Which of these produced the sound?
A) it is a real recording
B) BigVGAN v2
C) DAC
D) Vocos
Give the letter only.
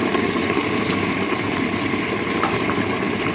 B